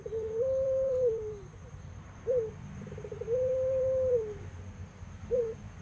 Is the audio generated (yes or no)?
yes